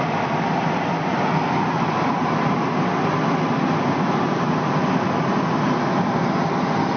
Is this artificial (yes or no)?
no